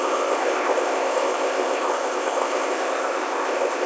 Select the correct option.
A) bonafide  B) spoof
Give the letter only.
B